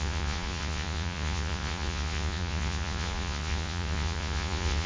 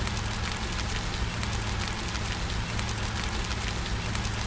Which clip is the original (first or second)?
second